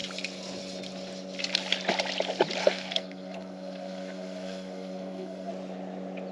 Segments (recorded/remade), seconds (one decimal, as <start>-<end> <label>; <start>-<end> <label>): 0.0-2.6 recorded; 2.6-5.5 remade; 5.5-6.3 recorded